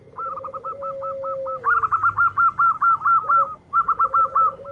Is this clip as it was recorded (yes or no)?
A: yes